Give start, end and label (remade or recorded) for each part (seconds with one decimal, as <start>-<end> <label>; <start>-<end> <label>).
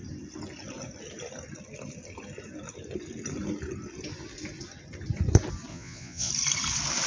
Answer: 0.0-5.7 recorded; 5.7-6.3 remade; 6.3-7.1 recorded